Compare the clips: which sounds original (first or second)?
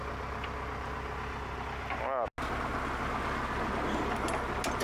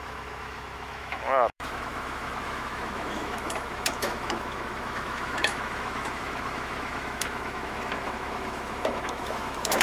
first